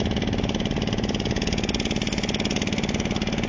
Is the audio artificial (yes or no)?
no